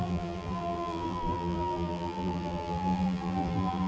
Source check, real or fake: fake